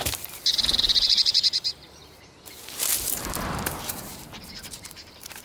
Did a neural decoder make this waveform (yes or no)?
yes